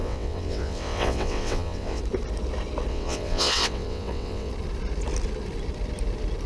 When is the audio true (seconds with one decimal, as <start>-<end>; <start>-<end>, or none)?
2.0-2.9; 4.5-6.5